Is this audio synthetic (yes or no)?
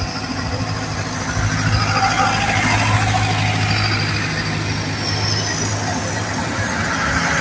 no